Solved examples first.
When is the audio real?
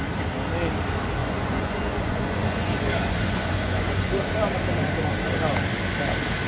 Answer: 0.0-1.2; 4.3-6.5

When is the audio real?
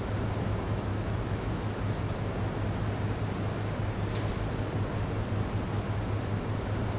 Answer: 0.0-0.9; 1.5-7.0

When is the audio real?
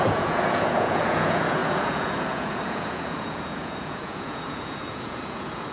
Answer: none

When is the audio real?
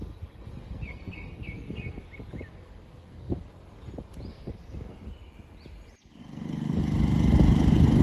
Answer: 0.0-0.6; 2.0-2.5; 3.5-4.3; 5.1-6.2; 6.8-8.0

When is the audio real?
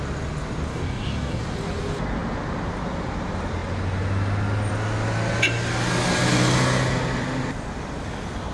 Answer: 0.0-0.7; 1.4-8.5